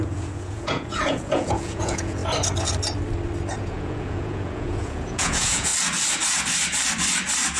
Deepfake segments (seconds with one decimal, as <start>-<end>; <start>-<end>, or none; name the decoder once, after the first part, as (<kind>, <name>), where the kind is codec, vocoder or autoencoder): 0.0-2.2 (vocoder, Vocos); 3.6-5.7